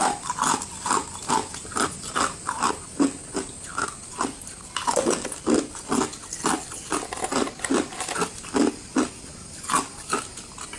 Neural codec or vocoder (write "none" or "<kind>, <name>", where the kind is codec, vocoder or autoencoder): none